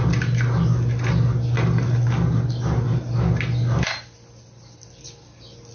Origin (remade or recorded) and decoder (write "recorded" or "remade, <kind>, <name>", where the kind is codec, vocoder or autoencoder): recorded